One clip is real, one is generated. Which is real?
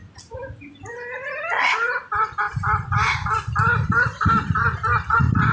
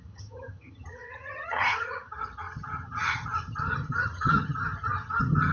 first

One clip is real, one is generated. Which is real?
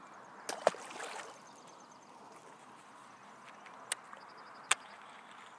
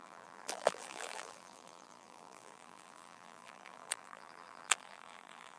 first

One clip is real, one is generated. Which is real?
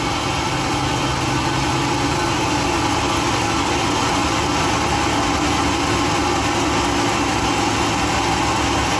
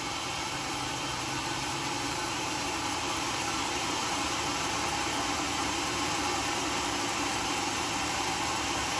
first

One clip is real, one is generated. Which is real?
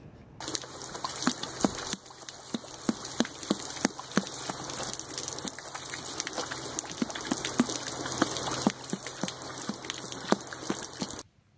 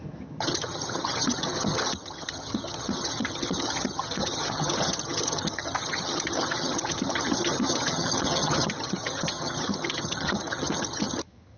first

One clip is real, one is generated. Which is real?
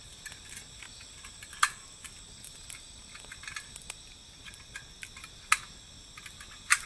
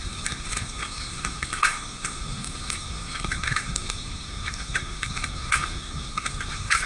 first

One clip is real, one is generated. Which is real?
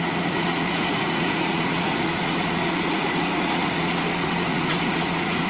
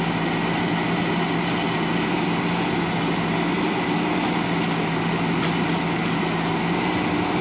second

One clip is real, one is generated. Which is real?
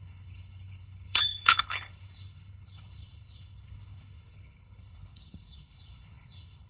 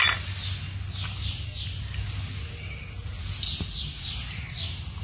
second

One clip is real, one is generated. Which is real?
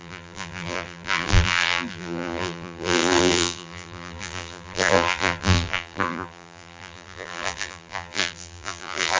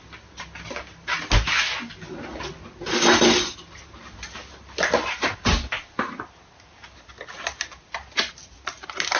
second